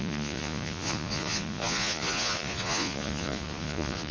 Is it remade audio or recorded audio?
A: remade